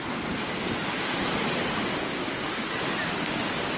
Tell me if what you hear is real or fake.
real